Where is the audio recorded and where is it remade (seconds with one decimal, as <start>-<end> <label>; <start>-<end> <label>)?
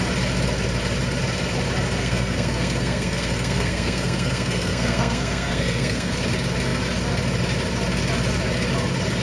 0.0-2.0 recorded; 2.0-6.1 remade; 6.1-9.2 recorded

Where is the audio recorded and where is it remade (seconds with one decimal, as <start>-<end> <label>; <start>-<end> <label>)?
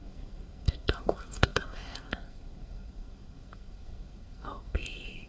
0.0-5.3 remade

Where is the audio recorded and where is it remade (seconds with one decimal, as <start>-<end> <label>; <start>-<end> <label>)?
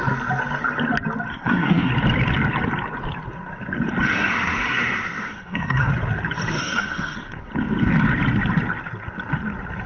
0.0-1.3 recorded; 1.3-1.9 remade; 1.9-4.1 recorded; 4.1-5.9 remade; 5.9-6.6 recorded; 6.6-7.5 remade; 7.5-9.9 recorded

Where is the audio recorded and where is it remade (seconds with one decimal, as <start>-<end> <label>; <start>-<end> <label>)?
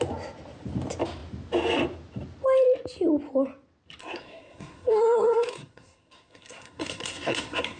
0.0-4.0 recorded; 4.0-7.8 remade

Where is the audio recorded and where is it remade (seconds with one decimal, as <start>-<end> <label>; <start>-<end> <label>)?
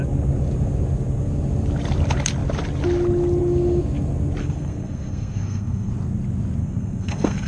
0.0-4.4 recorded; 4.4-5.9 remade; 5.9-6.6 recorded; 6.6-7.5 remade